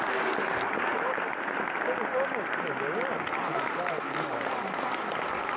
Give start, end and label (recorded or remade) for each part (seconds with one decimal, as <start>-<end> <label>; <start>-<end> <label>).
0.0-5.6 recorded